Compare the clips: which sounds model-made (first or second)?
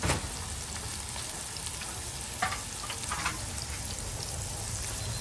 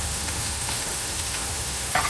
second